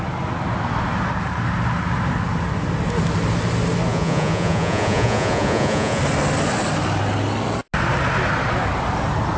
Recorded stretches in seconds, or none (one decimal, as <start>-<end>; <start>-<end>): 0.0-3.9; 6.0-9.4